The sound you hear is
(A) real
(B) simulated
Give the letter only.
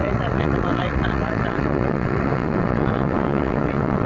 B